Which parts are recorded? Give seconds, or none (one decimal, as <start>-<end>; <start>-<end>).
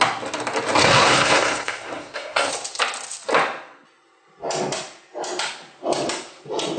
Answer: 0.0-0.8; 2.5-6.8